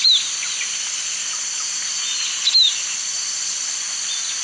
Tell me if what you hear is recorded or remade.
recorded